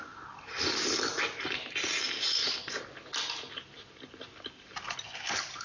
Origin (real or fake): real